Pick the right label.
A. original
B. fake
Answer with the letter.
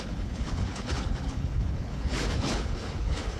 B